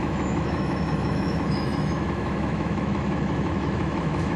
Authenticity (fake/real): fake